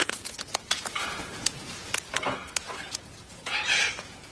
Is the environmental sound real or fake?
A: fake